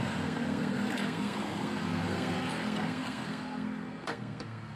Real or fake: fake